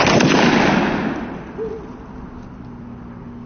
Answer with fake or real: real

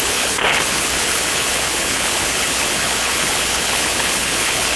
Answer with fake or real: fake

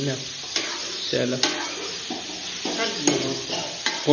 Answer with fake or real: real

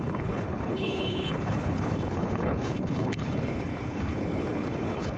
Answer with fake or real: fake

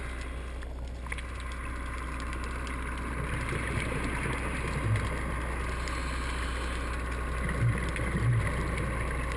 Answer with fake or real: real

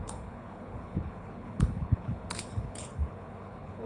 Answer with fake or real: fake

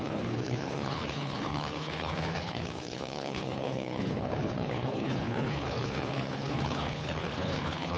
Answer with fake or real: fake